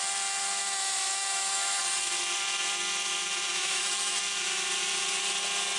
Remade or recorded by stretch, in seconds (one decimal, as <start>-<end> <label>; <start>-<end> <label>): 0.0-0.6 recorded; 0.6-1.8 remade; 1.8-3.5 recorded; 3.5-4.2 remade; 4.2-5.8 recorded

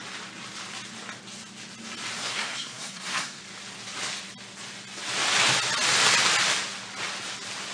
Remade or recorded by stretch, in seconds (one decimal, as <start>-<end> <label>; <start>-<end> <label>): 0.0-2.2 recorded; 2.2-3.4 remade; 3.4-7.7 recorded

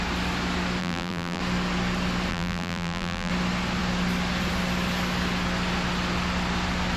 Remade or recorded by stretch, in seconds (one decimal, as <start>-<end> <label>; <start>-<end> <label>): 0.0-0.8 recorded; 0.8-1.4 remade; 1.4-2.3 recorded; 2.3-3.3 remade; 3.3-7.0 recorded

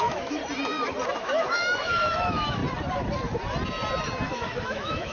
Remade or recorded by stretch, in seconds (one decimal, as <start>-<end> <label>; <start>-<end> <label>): 0.0-0.4 remade; 0.4-1.2 recorded; 1.2-2.6 remade; 2.6-4.3 recorded; 4.3-5.1 remade